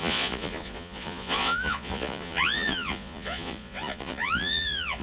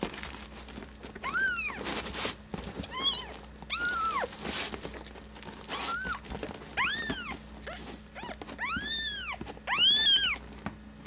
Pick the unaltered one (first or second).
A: second